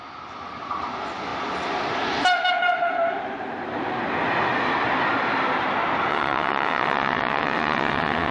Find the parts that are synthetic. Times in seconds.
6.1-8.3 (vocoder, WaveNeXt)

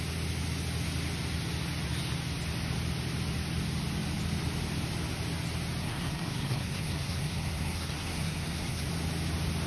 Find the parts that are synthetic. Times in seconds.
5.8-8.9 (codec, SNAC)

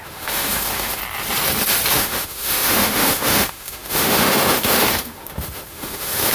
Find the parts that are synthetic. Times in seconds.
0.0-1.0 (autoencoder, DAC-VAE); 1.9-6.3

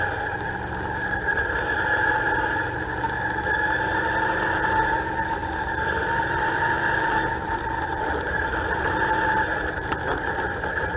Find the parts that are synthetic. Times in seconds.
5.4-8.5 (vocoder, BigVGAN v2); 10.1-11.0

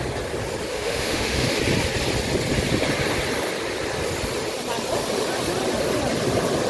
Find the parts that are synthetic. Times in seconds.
0.7-1.6 (autoencoder, DAC-VAE)

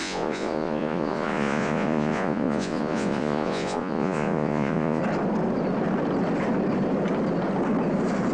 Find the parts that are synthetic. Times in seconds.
0.0-5.0 (vocoder, Vocos)

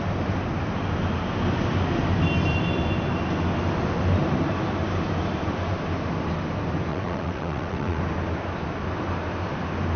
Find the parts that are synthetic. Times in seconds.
6.9-8.0 (vocoder, WaveNeXt)

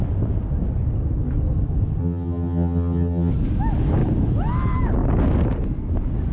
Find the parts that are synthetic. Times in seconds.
2.0-3.3 (vocoder, HiFi-GAN)